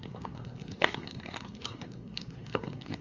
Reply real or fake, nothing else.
fake